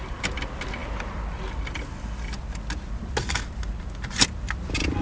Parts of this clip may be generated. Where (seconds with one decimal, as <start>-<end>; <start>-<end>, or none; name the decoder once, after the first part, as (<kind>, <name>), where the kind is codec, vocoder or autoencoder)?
none